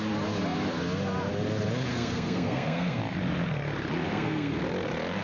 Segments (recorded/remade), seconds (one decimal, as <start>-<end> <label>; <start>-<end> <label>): 0.0-1.9 recorded; 1.9-3.0 remade; 3.0-4.1 recorded; 4.1-4.6 remade; 4.6-5.2 recorded